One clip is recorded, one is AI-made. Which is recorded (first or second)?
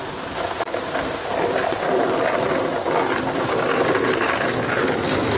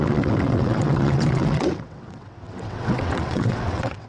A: first